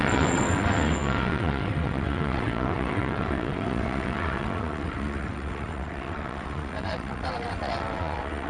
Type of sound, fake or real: fake